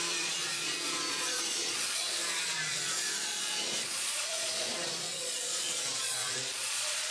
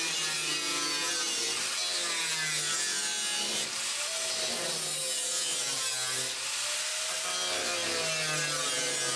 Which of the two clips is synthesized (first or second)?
first